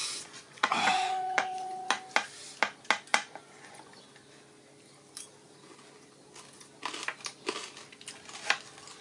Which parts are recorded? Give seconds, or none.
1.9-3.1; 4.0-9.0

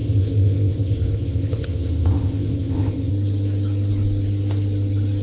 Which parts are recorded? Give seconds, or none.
3.1-5.2

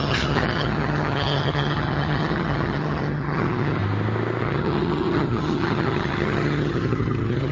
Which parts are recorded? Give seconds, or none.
3.8-4.4

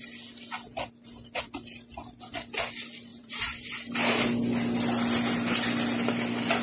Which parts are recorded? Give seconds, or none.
0.0-3.1; 3.7-6.6